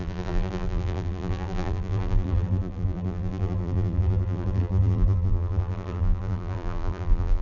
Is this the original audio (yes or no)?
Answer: no